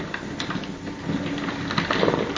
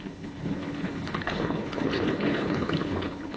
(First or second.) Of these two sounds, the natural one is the first